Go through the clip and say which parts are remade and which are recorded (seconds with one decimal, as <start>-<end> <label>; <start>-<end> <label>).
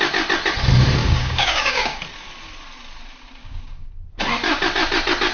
0.0-1.0 recorded; 1.0-2.0 remade; 2.0-3.4 recorded; 3.4-3.9 remade; 3.9-5.3 recorded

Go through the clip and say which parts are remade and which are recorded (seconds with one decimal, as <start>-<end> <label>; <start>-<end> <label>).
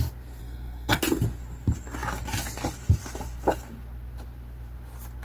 0.0-0.4 recorded; 0.4-1.0 remade; 1.0-5.2 recorded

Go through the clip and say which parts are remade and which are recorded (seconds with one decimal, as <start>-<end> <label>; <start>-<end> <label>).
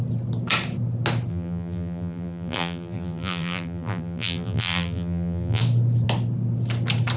0.0-1.3 recorded; 1.3-5.6 remade; 5.6-7.2 recorded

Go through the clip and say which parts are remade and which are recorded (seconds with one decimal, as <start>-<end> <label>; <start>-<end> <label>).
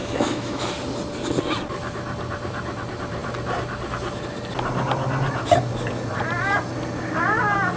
0.0-0.6 remade; 0.6-7.8 recorded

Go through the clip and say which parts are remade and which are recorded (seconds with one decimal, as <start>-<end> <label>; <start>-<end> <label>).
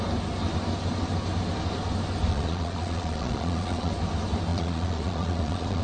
0.0-2.3 recorded; 2.3-3.9 remade; 3.9-4.5 recorded; 4.5-5.8 remade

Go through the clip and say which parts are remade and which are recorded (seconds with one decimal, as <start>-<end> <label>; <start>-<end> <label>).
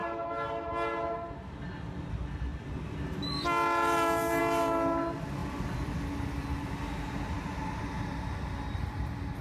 0.0-9.4 recorded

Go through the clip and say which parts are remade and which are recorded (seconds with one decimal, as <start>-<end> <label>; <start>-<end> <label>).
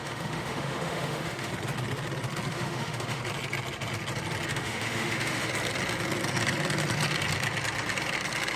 0.0-1.5 remade; 1.5-2.5 recorded; 2.5-3.2 remade; 3.2-4.5 recorded; 4.5-5.5 remade; 5.5-8.6 recorded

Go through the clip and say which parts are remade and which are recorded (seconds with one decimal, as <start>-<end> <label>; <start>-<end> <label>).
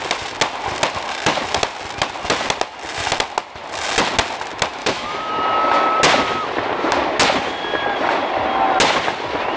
0.0-4.8 recorded; 4.8-5.3 remade; 5.3-9.6 recorded